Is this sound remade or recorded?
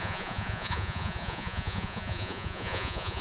remade